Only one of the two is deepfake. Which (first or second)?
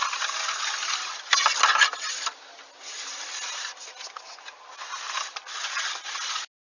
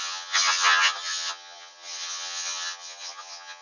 second